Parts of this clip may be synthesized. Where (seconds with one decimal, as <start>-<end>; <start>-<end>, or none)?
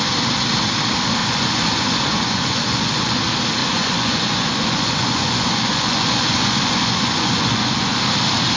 1.2-3.2; 3.6-8.0